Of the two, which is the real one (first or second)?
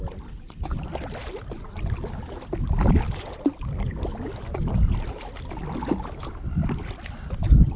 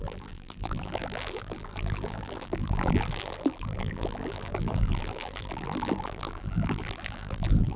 first